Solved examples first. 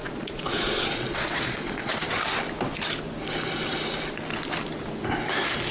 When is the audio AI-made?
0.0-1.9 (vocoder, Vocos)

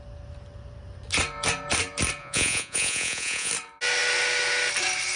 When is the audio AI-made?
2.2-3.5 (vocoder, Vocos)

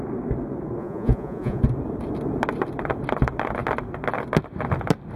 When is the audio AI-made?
0.8-1.6 (vocoder, Vocos)

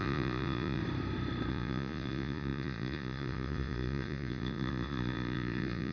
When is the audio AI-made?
0.0-0.8 (vocoder, Vocos); 1.5-5.9

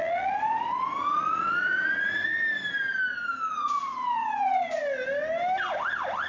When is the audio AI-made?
0.0-2.3 (vocoder, Vocos); 3.5-4.8